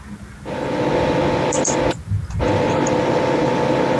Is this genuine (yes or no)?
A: yes